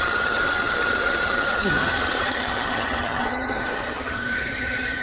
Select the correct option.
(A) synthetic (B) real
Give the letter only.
A